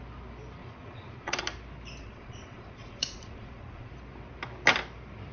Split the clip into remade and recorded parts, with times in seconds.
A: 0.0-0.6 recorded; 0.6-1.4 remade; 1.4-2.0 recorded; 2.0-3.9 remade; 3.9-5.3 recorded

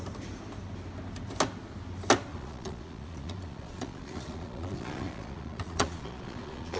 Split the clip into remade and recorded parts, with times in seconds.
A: 0.0-2.3 recorded; 2.3-6.8 remade

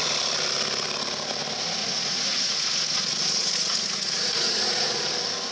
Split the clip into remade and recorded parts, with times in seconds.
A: 0.0-1.8 recorded; 1.8-5.1 remade; 5.1-5.5 recorded

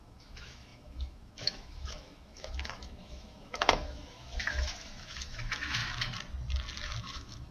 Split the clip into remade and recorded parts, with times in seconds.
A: 0.0-5.8 remade; 5.8-7.0 recorded; 7.0-7.5 remade

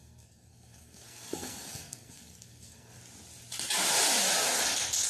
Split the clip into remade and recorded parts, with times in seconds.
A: 0.0-3.0 remade; 3.0-5.1 recorded